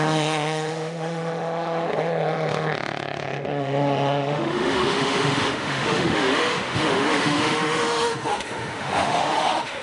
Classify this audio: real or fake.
fake